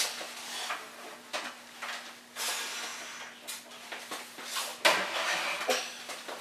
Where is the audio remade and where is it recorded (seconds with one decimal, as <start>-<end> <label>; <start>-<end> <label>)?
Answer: 0.0-6.4 recorded